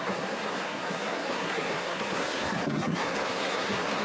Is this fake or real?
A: fake